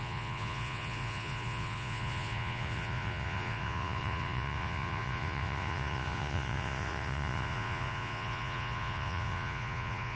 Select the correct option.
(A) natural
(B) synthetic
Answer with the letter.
B